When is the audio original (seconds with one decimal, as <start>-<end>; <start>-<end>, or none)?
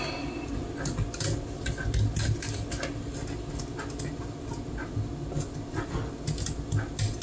0.0-7.2